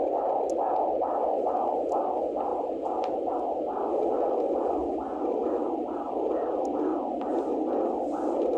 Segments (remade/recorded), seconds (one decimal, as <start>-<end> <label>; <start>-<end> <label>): 0.0-2.5 recorded; 2.5-3.3 remade; 3.3-5.4 recorded; 5.4-6.5 remade; 6.5-8.6 recorded